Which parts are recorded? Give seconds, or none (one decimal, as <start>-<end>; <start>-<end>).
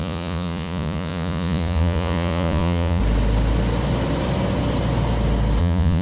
3.0-5.6